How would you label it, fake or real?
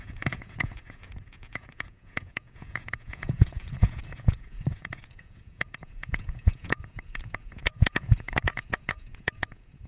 fake